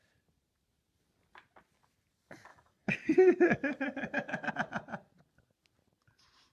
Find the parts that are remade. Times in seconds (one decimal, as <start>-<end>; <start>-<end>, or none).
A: 2.5-4.5